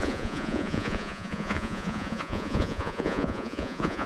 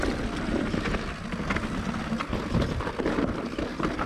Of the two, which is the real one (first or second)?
second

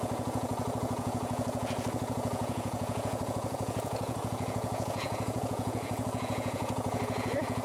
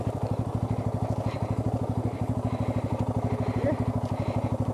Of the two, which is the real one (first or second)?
second